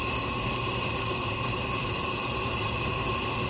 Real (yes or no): yes